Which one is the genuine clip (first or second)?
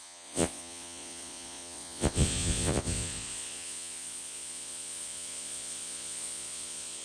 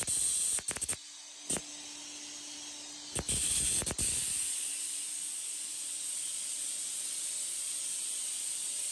second